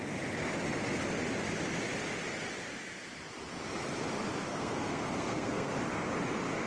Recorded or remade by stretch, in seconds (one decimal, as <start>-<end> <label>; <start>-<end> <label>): 0.0-4.5 recorded; 4.5-5.7 remade; 5.7-6.7 recorded